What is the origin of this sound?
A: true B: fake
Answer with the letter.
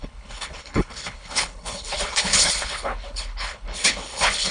B